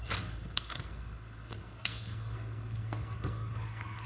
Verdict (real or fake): fake